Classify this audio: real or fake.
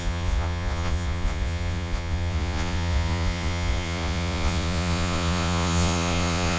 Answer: fake